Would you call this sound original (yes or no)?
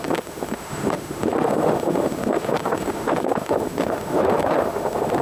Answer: no